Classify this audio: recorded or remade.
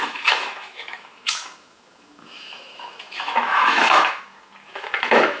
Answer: remade